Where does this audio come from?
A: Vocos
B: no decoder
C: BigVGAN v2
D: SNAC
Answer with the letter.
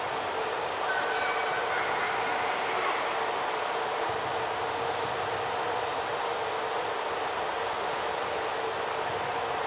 B